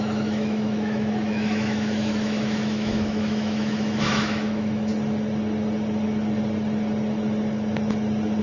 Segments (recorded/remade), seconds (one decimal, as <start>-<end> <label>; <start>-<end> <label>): 0.0-4.9 remade; 4.9-8.4 recorded

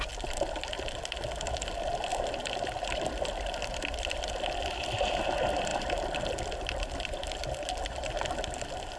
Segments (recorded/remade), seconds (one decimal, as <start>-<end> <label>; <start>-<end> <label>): 0.0-9.0 recorded